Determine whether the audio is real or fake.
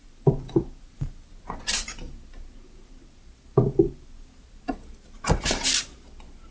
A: real